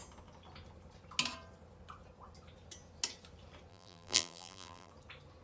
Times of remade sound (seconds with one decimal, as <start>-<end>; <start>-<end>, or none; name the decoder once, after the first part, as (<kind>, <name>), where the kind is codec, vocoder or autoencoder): 3.7-4.9 (vocoder, BigVGAN v2)